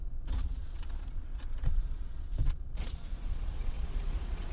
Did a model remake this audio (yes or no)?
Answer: yes